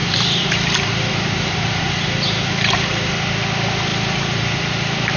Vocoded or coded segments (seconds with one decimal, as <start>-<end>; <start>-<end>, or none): 0.0-3.1; 3.9-5.2